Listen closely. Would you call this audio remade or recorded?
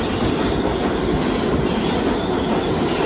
recorded